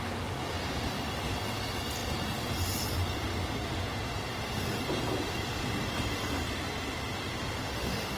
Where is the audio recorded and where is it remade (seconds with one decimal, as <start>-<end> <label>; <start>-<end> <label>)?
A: 0.0-7.5 recorded; 7.5-8.2 remade